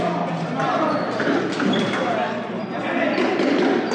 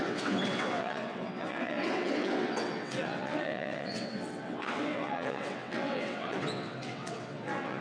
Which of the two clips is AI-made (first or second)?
second